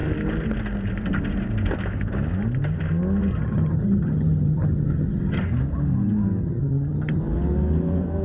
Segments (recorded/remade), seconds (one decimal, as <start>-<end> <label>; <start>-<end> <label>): 0.0-3.3 recorded; 3.3-5.4 remade; 5.4-6.4 recorded; 6.4-7.2 remade; 7.2-8.2 recorded